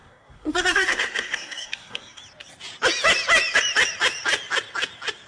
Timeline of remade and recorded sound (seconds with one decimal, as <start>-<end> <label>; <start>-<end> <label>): 0.0-2.2 remade; 2.2-5.3 recorded